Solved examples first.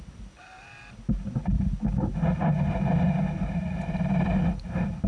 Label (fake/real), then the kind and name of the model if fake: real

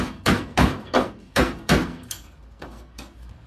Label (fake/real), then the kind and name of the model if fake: fake, codec, SNAC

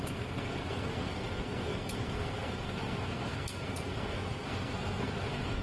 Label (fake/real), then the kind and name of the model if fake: fake, codec, SNAC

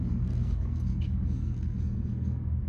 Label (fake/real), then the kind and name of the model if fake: fake, codec, SNAC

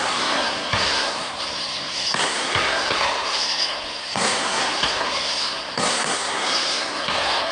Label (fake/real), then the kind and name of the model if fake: fake, codec, SNAC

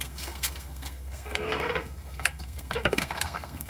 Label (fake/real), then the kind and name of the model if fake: fake, codec, SNAC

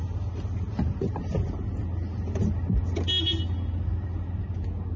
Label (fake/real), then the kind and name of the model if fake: real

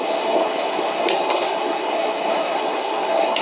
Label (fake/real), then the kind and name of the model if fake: fake, codec, SNAC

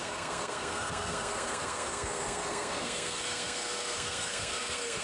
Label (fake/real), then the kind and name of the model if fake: fake, codec, SNAC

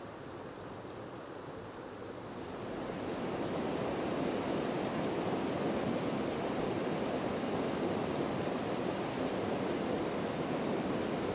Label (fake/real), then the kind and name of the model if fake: real